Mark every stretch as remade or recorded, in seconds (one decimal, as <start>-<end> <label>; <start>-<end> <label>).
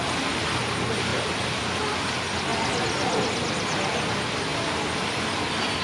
0.0-1.1 recorded; 1.1-1.6 remade; 1.6-2.5 recorded; 2.5-3.3 remade; 3.3-5.8 recorded